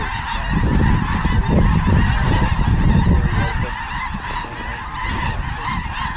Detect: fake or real real